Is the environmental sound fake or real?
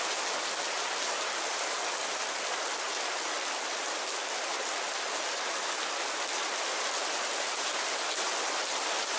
real